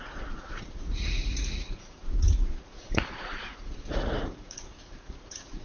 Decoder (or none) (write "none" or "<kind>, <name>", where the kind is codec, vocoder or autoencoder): vocoder, Vocos